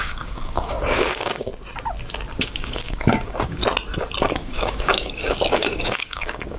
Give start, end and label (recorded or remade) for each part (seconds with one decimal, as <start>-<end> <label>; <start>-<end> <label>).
0.0-1.5 remade; 1.5-2.4 recorded; 2.4-3.6 remade; 3.6-4.2 recorded; 4.2-6.6 remade